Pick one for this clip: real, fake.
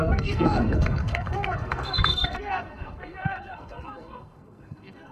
fake